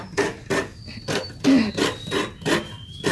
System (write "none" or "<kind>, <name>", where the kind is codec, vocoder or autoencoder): none